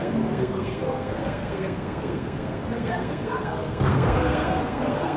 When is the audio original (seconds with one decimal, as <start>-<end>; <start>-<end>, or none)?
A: none